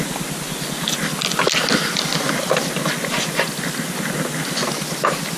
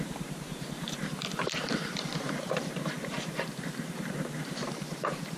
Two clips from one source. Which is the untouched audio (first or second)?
first